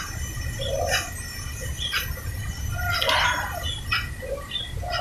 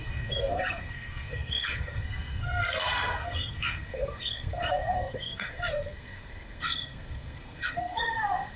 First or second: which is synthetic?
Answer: second